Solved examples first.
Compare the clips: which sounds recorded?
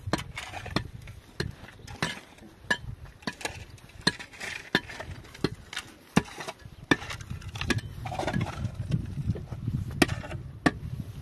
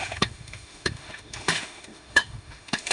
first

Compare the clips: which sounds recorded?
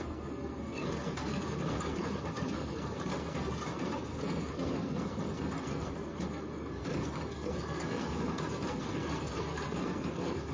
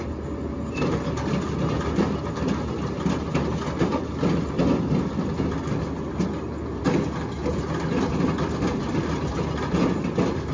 second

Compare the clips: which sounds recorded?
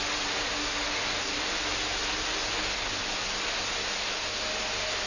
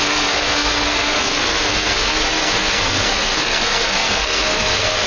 first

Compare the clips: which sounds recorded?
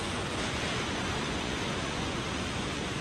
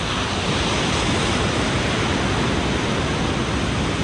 second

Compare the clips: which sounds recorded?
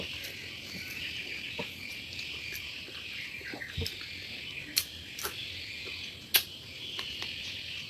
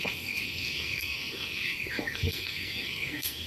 first